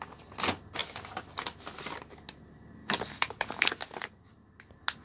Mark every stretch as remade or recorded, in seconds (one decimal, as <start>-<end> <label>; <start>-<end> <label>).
0.0-2.8 recorded; 2.8-3.7 remade; 3.7-5.0 recorded